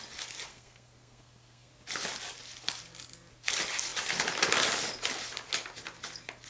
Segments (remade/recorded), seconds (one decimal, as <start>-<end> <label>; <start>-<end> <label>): 0.0-0.5 recorded; 0.5-1.7 remade; 1.7-6.5 recorded

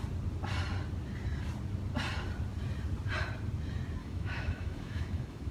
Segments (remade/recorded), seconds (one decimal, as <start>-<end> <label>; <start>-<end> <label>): 0.0-4.0 recorded; 4.0-5.5 remade

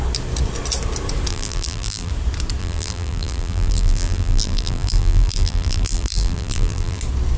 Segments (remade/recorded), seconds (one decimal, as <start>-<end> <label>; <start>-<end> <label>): 0.0-1.3 recorded; 1.3-2.1 remade; 2.1-2.6 recorded; 2.6-7.0 remade; 7.0-7.4 recorded

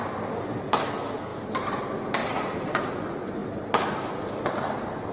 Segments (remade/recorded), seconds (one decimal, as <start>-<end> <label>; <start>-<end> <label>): 0.0-1.3 recorded; 1.3-1.8 remade; 1.8-2.2 recorded; 2.2-3.0 remade; 3.0-5.1 recorded